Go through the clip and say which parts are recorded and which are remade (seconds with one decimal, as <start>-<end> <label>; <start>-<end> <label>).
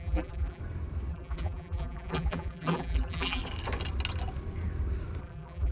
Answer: 0.0-0.6 remade; 0.6-1.1 recorded; 1.1-3.4 remade; 3.4-5.2 recorded; 5.2-5.7 remade